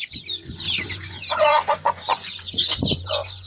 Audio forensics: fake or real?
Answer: fake